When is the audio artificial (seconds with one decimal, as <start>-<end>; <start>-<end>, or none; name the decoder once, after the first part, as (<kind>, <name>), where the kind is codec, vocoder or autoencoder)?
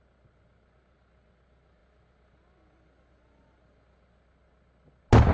none